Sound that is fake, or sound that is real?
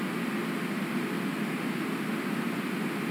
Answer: real